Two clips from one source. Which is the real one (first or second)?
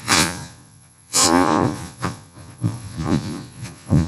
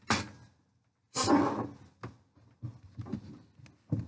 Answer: second